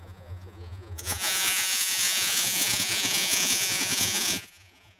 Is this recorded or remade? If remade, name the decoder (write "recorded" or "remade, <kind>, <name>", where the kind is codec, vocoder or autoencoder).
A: remade, vocoder, Vocos